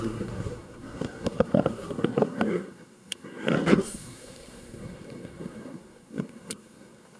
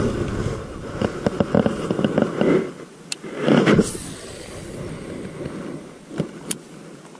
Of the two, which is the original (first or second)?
second